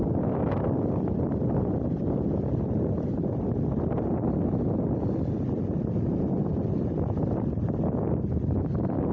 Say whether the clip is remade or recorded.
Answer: recorded